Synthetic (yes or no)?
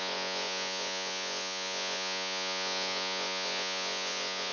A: yes